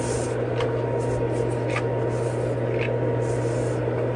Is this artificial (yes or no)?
no